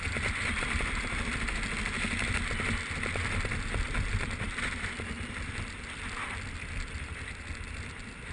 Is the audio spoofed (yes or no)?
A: no